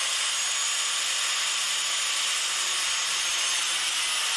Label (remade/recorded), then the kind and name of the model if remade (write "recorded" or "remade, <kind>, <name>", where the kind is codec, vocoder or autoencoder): recorded